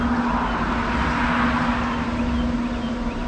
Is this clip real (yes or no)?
yes